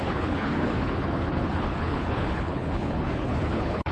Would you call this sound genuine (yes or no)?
no